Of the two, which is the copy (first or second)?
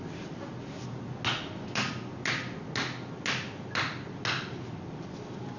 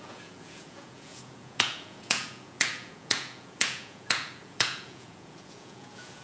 second